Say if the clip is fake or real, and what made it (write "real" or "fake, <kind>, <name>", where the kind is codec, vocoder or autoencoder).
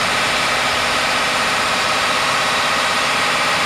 fake, vocoder, BigVGAN v2